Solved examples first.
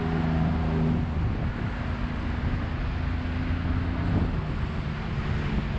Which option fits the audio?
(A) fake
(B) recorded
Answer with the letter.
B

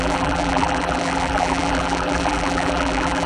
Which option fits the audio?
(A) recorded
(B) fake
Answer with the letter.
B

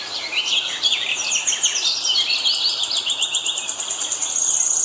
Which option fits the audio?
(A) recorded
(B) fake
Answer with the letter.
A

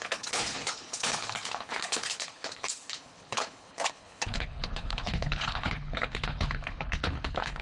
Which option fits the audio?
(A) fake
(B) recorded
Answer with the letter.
A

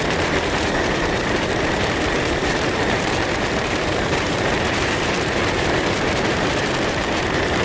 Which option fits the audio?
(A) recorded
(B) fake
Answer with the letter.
B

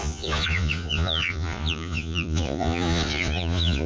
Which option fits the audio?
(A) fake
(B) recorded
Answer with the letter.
A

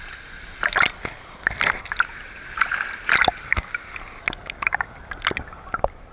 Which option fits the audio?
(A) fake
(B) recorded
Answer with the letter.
B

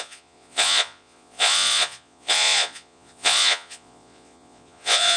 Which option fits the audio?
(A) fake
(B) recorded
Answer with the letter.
A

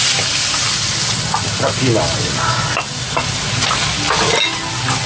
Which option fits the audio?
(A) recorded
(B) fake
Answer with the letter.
A